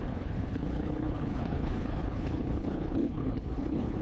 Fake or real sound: fake